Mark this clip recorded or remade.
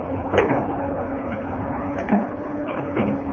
remade